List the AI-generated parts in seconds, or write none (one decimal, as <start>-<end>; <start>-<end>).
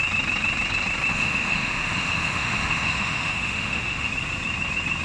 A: 1.1-4.1